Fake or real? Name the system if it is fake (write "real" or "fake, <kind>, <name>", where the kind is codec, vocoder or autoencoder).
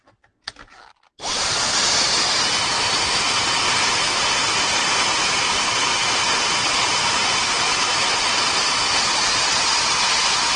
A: real